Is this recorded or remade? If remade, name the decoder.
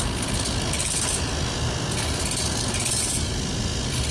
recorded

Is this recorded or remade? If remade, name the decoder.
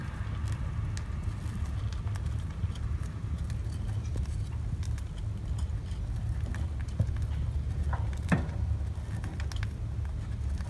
recorded